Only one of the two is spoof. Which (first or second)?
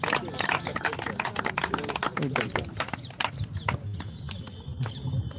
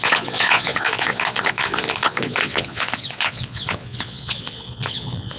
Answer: second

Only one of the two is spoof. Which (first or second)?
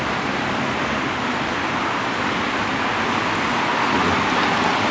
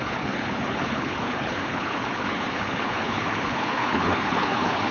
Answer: second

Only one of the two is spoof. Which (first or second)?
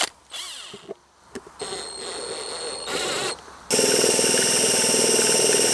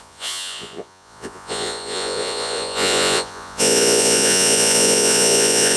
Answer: second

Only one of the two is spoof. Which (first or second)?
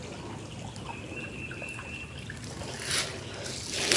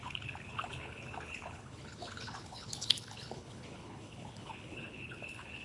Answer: second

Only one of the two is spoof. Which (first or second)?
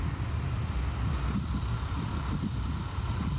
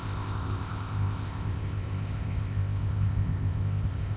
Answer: second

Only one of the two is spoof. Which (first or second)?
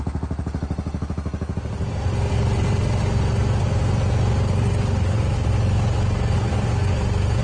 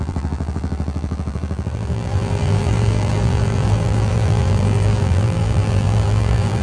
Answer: second